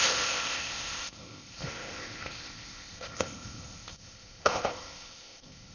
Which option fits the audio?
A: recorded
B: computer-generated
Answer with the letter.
B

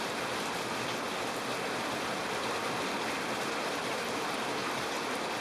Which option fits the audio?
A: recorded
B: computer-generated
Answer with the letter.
A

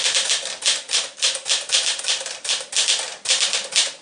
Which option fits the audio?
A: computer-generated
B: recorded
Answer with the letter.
B